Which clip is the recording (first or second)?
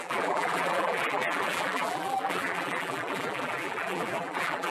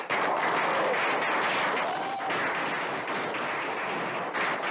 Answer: second